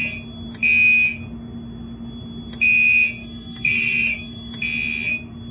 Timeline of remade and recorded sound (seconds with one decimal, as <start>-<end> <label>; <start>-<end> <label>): 0.0-3.2 recorded; 3.2-4.5 remade; 4.5-5.5 recorded

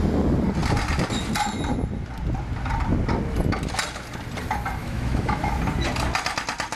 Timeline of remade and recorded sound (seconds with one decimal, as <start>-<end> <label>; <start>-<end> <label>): 0.0-4.8 recorded; 4.8-5.5 remade; 5.5-6.8 recorded

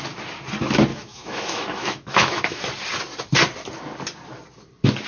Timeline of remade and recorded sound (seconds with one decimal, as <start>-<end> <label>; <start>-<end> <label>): 0.0-0.9 recorded; 0.9-2.6 remade; 2.6-5.1 recorded

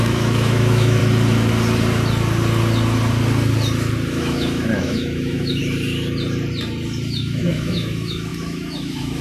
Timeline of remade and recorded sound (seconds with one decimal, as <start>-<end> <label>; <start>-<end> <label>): 0.0-1.0 remade; 1.0-4.1 recorded; 4.1-5.6 remade; 5.6-7.2 recorded; 7.2-9.2 remade

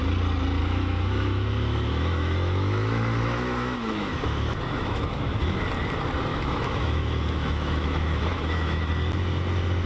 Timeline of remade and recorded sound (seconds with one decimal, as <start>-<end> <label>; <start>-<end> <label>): 0.0-0.6 recorded; 0.6-5.6 remade; 5.6-6.3 recorded; 6.3-8.9 remade; 8.9-9.9 recorded

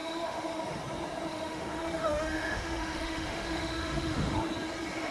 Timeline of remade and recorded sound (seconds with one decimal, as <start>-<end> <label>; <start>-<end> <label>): 0.0-0.6 remade; 0.6-1.3 recorded; 1.3-4.4 remade; 4.4-5.1 recorded

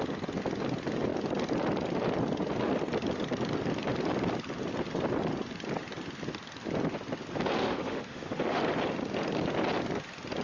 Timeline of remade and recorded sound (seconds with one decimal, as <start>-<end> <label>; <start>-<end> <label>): 0.0-7.6 recorded; 7.6-8.6 remade; 8.6-10.4 recorded

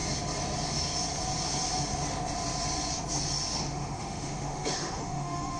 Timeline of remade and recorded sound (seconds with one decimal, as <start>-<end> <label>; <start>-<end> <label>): 0.0-3.6 recorded; 3.6-5.6 remade